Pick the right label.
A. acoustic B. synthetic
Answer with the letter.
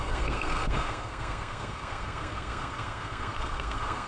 B